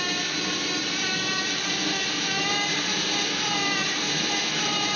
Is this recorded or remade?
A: recorded